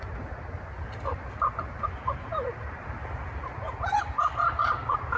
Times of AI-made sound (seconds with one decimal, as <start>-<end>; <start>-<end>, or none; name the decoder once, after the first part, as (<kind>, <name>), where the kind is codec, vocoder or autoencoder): none